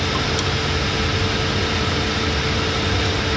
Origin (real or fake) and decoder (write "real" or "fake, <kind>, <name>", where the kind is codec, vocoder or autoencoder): real